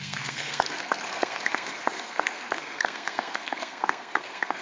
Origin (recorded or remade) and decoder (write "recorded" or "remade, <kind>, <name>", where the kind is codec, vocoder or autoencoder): remade, codec, SNAC